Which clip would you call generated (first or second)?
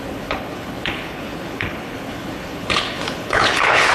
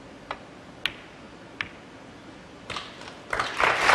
first